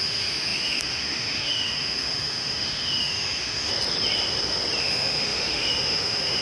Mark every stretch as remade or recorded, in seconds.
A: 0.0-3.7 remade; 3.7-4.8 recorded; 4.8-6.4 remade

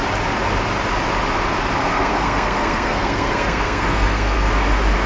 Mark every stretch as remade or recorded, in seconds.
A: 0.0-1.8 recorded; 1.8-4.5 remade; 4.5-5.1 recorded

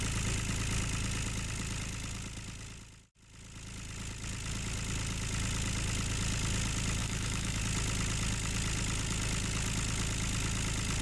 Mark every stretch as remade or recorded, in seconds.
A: 0.0-7.0 recorded; 7.0-7.6 remade; 7.6-11.0 recorded